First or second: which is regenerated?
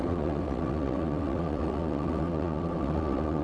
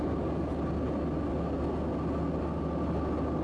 first